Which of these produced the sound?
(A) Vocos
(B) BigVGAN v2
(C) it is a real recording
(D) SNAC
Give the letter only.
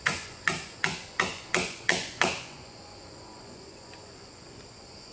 A